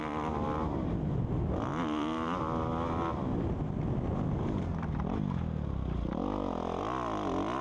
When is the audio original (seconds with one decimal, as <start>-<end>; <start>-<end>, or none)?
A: 0.0-7.6